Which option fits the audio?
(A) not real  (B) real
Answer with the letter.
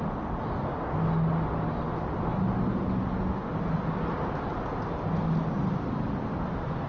B